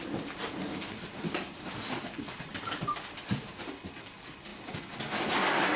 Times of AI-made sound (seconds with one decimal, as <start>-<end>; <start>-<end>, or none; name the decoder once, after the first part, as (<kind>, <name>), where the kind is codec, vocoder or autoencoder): none